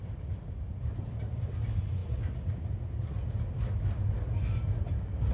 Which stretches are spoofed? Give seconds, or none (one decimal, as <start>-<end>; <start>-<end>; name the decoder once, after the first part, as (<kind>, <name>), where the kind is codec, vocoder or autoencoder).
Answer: 0.0-2.0 (vocoder, BigVGAN v2)